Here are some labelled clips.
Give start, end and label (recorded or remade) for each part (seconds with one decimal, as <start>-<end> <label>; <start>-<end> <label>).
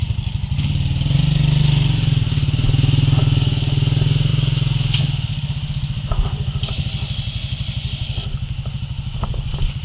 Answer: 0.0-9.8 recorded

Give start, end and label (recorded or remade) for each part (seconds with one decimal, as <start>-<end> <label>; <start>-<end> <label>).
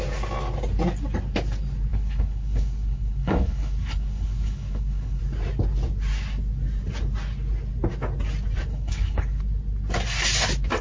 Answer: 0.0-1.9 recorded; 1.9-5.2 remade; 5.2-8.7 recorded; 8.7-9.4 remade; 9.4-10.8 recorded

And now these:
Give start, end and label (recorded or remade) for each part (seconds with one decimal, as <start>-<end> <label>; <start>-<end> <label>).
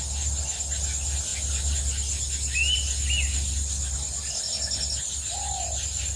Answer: 0.0-6.2 recorded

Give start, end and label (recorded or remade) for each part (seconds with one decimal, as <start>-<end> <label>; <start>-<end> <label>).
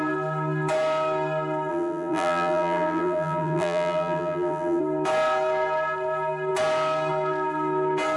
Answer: 0.0-1.7 recorded; 1.7-4.8 remade; 4.8-8.2 recorded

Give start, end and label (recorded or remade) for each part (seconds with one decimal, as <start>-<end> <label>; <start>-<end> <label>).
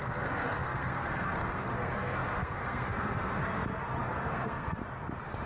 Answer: 0.0-3.4 remade; 3.4-4.0 recorded; 4.0-4.8 remade; 4.8-5.5 recorded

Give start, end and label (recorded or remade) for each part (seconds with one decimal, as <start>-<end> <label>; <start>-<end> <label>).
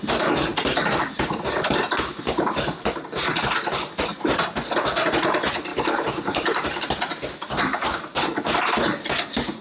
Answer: 0.0-5.7 recorded; 5.7-6.8 remade; 6.8-9.6 recorded